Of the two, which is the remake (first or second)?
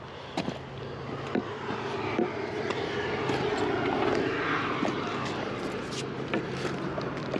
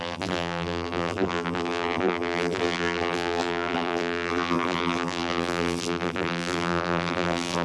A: second